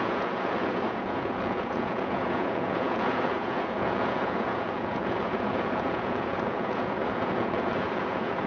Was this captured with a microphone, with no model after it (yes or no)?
no